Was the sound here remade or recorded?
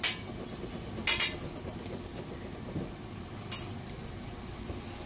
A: recorded